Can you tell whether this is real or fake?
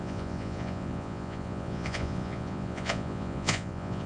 fake